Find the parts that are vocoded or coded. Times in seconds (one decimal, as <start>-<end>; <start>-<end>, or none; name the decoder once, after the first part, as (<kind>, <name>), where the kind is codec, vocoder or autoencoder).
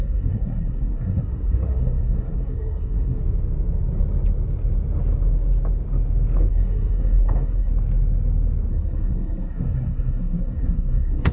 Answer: 0.0-3.2 (codec, SNAC); 6.5-7.7; 8.7-11.3